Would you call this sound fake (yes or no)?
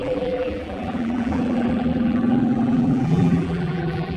yes